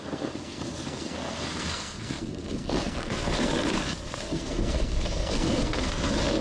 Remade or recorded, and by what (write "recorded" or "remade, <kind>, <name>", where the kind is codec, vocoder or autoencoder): remade, codec, SNAC